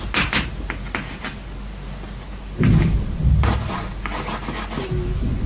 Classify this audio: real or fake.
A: real